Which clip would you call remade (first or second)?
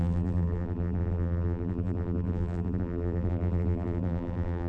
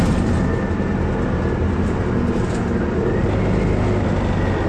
first